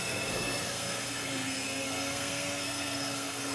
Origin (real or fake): fake